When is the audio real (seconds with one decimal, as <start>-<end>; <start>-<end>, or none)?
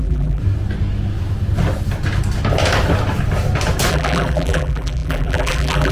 0.4-3.9